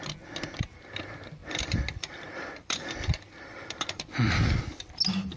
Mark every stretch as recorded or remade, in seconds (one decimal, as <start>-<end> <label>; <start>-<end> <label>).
0.0-1.4 recorded; 1.4-4.6 remade; 4.6-5.4 recorded

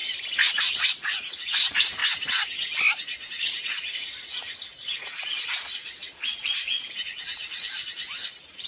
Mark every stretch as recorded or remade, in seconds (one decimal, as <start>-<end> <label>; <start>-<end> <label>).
0.0-0.6 recorded; 0.6-2.0 remade; 2.0-3.4 recorded; 3.4-8.7 remade

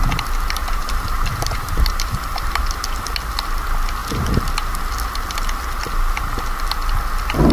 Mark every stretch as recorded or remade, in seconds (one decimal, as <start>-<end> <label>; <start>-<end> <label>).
0.0-0.7 recorded; 0.7-2.6 remade; 2.6-7.5 recorded